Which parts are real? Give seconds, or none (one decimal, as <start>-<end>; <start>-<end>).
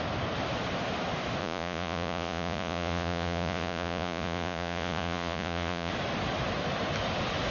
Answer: 0.0-1.4; 5.9-7.5